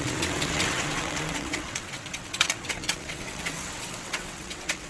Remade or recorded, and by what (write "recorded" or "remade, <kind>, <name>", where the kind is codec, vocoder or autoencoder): remade, vocoder, WaveNeXt